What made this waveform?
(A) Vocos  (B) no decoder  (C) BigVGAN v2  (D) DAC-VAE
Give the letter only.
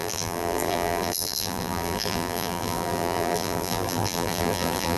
C